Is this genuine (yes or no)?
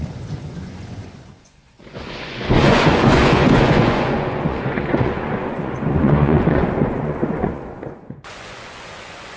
no